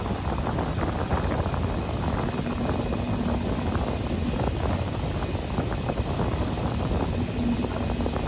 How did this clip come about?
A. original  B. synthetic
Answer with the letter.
A